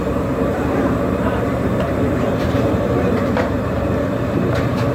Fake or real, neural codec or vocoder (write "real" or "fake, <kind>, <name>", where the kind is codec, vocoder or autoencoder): fake, vocoder, BigVGAN v2